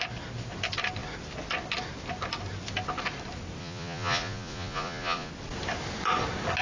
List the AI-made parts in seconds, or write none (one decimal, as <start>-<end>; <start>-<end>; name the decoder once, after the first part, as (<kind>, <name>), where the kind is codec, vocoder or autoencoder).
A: 3.6-5.3 (vocoder, Vocos)